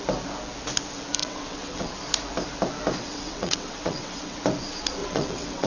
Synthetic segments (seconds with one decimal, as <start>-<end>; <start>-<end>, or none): 1.2-1.9; 3.0-4.4; 5.0-5.7